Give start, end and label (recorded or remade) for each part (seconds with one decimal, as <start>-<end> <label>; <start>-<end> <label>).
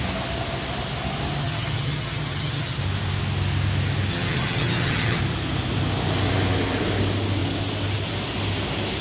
0.0-1.4 recorded; 1.4-2.8 remade; 2.8-4.1 recorded; 4.1-5.2 remade; 5.2-9.0 recorded